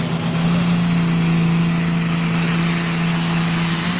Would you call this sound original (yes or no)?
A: yes